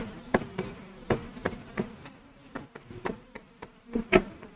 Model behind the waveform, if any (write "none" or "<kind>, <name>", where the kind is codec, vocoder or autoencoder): vocoder, BigVGAN v2